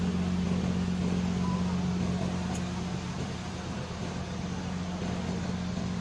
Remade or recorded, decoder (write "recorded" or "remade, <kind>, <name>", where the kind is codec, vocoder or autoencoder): recorded